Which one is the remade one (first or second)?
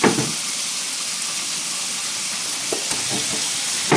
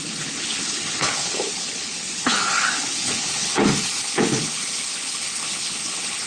second